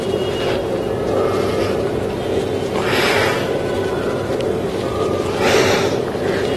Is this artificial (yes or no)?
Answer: no